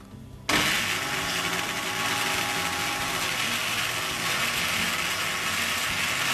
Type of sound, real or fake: real